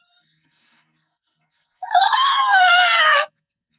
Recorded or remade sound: remade